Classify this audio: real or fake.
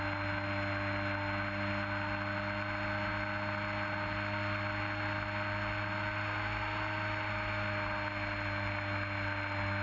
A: real